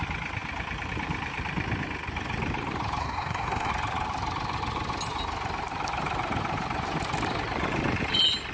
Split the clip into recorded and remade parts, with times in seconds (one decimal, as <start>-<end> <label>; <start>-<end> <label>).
0.0-3.0 recorded; 3.0-3.7 remade; 3.7-8.5 recorded